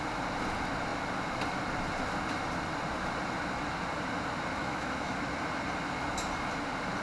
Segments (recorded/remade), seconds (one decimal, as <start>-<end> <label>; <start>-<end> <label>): 0.0-4.6 recorded; 4.6-5.1 remade; 5.1-7.0 recorded